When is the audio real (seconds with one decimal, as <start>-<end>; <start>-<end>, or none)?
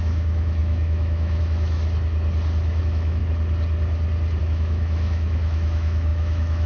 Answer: 1.8-2.8; 3.2-4.4